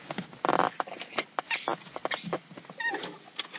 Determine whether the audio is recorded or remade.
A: recorded